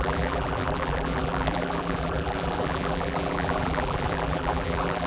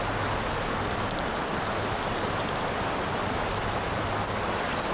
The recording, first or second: second